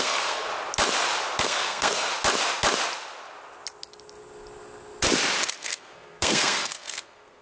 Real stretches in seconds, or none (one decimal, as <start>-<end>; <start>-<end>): 0.5-1.4; 2.1-5.6